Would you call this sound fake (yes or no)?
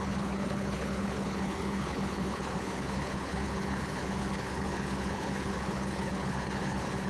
yes